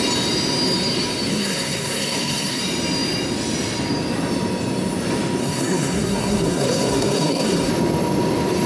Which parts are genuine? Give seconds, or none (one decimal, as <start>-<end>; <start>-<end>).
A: 0.0-1.3; 2.6-5.4; 7.7-8.7